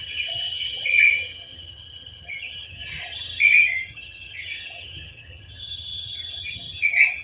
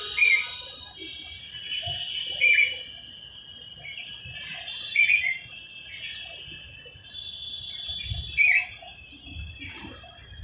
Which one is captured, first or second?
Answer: second